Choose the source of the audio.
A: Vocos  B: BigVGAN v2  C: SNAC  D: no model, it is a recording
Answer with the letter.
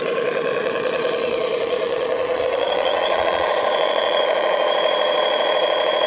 A